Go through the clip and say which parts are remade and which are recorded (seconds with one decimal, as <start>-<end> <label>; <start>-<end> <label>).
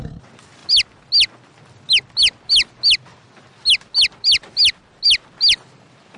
0.0-6.2 recorded